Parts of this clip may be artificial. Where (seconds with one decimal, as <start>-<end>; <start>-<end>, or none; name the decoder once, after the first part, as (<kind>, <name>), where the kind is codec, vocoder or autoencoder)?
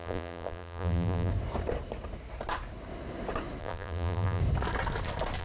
0.0-1.3 (vocoder, BigVGAN v2); 3.6-4.4